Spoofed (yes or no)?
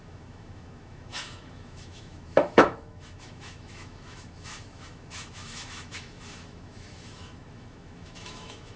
yes